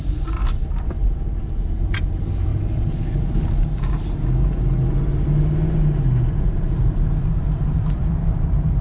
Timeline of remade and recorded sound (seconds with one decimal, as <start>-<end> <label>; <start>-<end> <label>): 0.0-0.4 remade; 0.4-0.9 recorded; 0.9-2.5 remade; 2.5-6.4 recorded; 6.4-8.8 remade